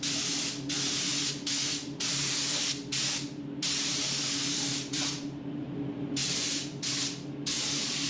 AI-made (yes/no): no